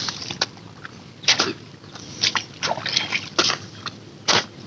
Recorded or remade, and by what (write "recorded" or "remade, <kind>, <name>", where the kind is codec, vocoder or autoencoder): recorded